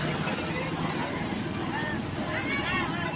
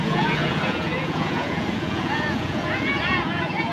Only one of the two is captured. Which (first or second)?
first